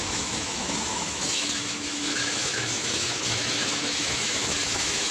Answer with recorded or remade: remade